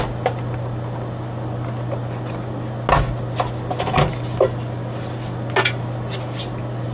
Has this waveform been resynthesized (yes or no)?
no